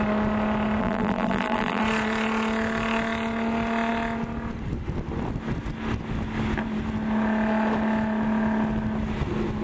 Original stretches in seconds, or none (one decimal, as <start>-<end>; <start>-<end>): 0.0-0.8; 1.8-9.6